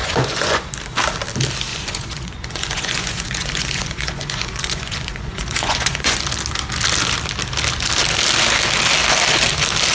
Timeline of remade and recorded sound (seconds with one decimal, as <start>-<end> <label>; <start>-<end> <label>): 0.0-0.6 remade; 0.6-1.7 recorded; 1.7-6.2 remade; 6.2-9.9 recorded